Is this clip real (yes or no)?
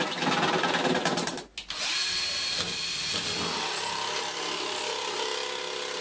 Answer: yes